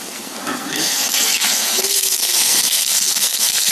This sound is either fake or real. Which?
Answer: fake